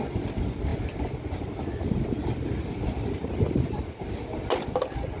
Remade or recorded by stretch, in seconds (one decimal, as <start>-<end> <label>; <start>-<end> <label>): 0.0-5.2 recorded